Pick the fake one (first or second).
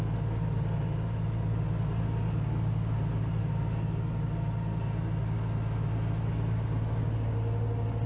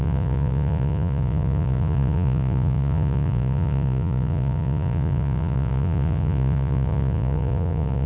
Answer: second